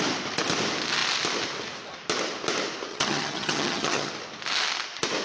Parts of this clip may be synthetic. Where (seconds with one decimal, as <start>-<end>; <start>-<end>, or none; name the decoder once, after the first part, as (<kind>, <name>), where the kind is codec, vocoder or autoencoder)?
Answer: 2.9-4.1 (vocoder, HiFi-GAN)